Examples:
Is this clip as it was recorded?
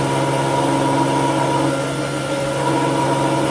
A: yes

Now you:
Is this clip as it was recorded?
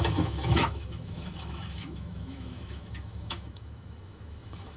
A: no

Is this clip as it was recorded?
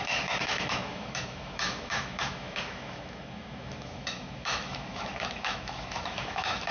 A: no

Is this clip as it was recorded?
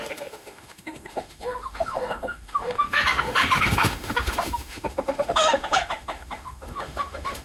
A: no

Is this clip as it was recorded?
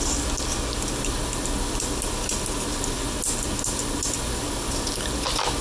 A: yes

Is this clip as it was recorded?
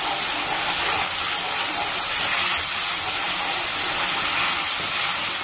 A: yes